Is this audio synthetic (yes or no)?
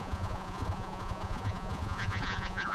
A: yes